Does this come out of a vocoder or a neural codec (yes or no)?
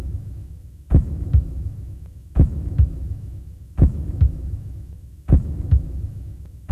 yes